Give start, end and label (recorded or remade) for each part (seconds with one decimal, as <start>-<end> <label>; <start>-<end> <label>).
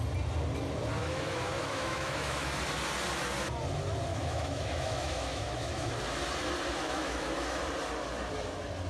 0.0-1.0 recorded; 1.0-2.6 remade; 2.6-4.1 recorded; 4.1-5.9 remade; 5.9-6.8 recorded; 6.8-7.6 remade; 7.6-8.9 recorded